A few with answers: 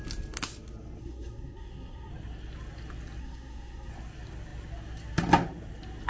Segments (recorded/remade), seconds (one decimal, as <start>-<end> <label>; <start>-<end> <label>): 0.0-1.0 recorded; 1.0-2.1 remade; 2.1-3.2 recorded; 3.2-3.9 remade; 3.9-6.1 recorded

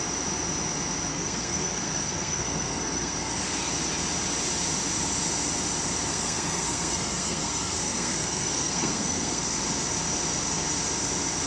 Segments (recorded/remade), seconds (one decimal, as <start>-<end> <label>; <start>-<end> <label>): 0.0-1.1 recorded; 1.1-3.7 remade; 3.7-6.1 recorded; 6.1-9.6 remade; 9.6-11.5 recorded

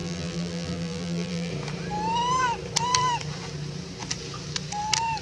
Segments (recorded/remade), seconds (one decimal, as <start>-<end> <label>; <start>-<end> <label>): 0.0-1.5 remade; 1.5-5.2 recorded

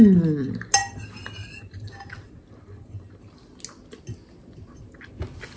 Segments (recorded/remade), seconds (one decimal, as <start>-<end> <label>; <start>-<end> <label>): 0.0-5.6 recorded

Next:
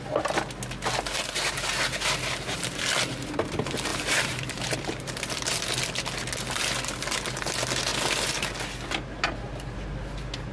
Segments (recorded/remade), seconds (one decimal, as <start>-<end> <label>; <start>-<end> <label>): 0.0-3.9 recorded; 3.9-5.6 remade; 5.6-10.5 recorded

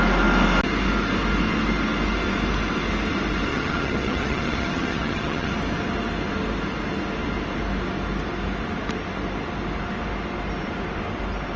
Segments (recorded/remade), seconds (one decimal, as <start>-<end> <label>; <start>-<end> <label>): 0.0-3.5 recorded; 3.5-5.5 remade; 5.5-11.6 recorded

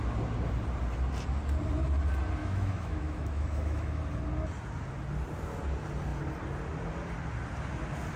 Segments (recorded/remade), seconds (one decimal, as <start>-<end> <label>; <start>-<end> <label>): 0.0-2.4 recorded; 2.4-4.0 remade; 4.0-8.2 recorded